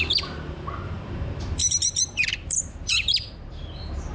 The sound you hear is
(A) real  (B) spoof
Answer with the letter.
B